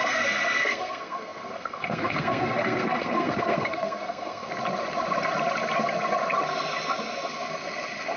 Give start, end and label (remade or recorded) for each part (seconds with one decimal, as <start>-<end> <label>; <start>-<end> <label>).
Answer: 0.0-4.5 remade; 4.5-8.2 recorded